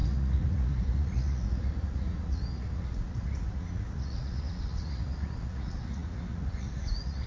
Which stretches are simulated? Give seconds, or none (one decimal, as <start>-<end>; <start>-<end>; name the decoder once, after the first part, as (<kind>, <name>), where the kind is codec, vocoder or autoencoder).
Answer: 0.0-7.3 (vocoder, Vocos)